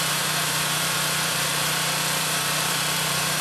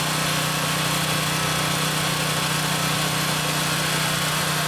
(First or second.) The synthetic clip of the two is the first